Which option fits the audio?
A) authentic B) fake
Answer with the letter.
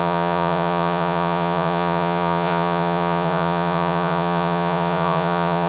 B